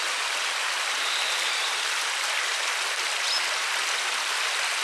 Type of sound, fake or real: real